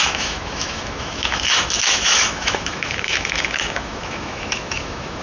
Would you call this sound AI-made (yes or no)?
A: yes